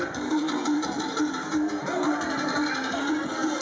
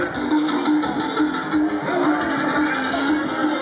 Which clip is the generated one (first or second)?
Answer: first